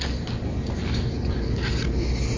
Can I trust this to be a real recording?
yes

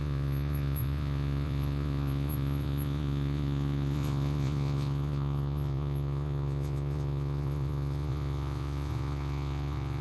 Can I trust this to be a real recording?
no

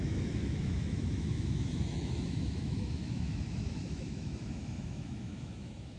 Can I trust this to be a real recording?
no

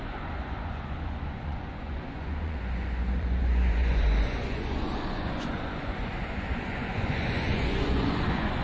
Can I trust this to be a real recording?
no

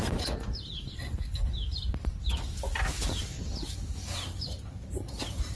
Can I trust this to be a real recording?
yes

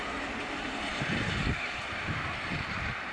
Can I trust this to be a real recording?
no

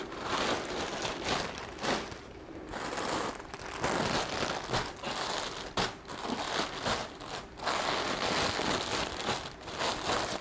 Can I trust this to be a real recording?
yes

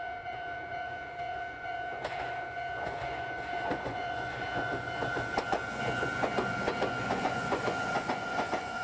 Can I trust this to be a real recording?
no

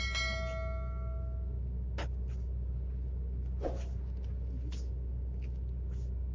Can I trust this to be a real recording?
yes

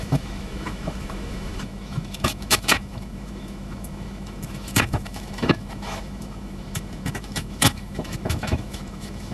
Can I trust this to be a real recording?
no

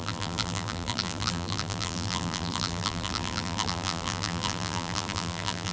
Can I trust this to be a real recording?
no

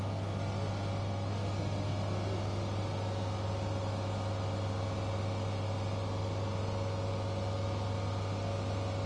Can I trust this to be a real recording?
yes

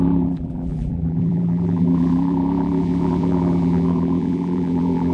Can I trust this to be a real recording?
no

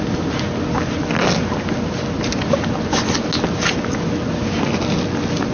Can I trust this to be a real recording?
yes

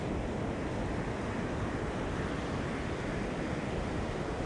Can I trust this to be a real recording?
yes